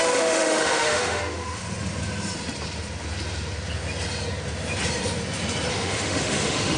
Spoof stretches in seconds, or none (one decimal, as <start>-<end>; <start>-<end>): 0.0-1.6; 5.7-6.8